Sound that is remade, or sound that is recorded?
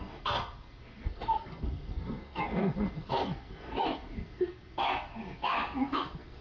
remade